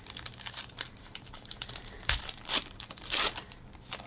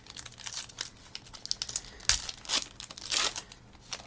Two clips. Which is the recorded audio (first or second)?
second